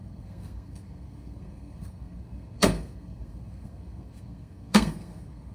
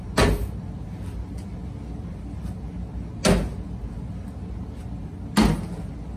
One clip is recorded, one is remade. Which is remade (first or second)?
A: first